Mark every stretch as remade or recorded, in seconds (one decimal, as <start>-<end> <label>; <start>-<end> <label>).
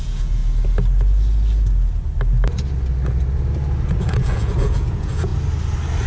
0.0-0.4 remade; 0.4-4.0 recorded; 4.0-5.3 remade; 5.3-6.1 recorded